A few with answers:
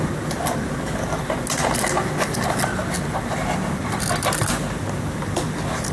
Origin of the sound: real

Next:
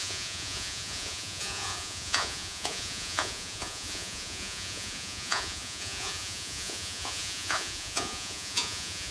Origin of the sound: fake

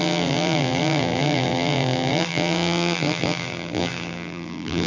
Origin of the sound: fake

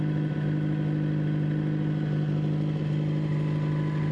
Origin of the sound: real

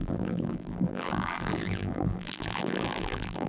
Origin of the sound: fake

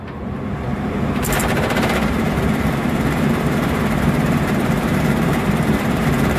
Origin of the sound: fake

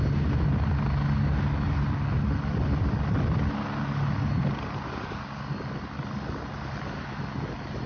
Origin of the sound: real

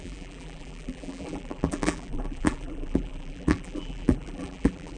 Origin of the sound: fake